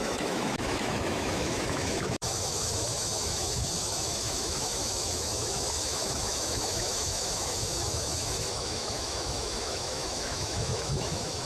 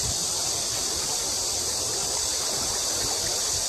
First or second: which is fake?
first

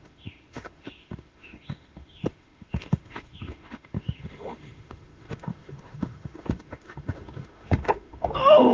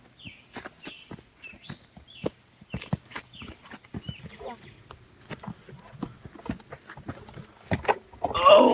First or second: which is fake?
first